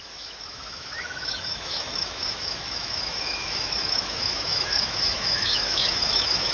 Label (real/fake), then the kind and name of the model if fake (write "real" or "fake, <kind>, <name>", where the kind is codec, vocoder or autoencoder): fake, autoencoder, DAC-VAE